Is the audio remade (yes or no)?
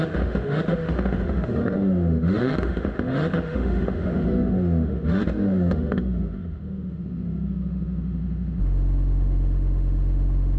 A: yes